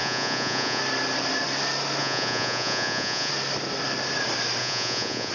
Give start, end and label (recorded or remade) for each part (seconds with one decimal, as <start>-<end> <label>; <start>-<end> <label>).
0.0-0.8 remade; 0.8-2.0 recorded; 2.0-3.3 remade; 3.3-4.6 recorded; 4.6-5.3 remade